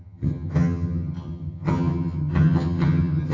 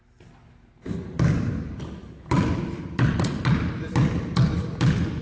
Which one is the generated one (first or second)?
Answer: first